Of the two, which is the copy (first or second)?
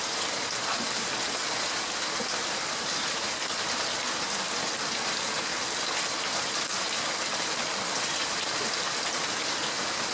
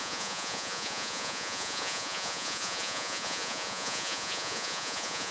second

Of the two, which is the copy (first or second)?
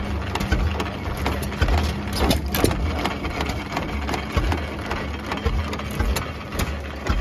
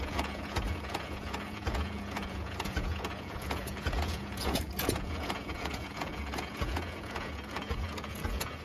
second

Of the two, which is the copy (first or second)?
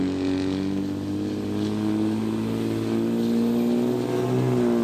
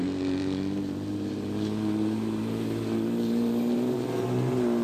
second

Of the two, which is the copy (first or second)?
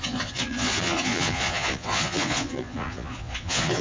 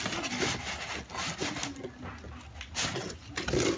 first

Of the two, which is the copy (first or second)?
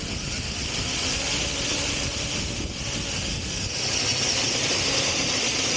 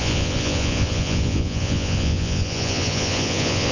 second